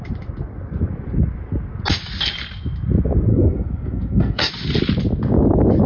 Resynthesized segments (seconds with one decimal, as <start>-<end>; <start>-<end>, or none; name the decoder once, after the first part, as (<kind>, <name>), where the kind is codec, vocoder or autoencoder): 3.3-4.5 (codec, SNAC)